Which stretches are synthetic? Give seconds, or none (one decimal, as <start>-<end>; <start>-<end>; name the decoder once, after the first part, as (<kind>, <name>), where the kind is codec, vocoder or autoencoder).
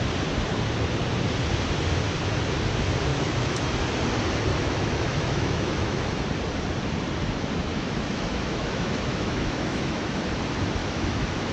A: 3.1-3.8 (autoencoder, DAC-VAE); 4.5-6.2; 7.7-10.2; 10.8-11.5